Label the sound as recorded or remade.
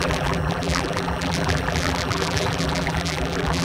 remade